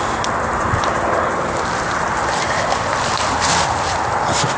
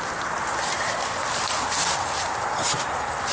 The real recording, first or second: second